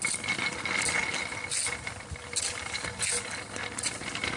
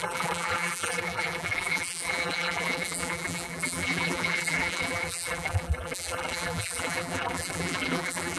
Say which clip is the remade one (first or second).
second